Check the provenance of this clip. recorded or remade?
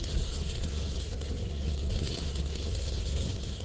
remade